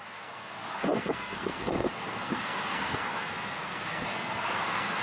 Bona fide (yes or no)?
no